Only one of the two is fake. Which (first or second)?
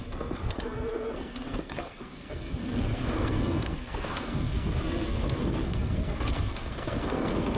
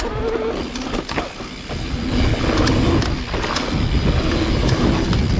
first